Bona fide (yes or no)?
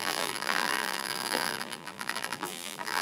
no